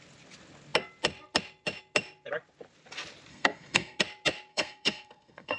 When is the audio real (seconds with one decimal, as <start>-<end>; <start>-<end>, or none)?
0.0-3.3; 4.0-4.5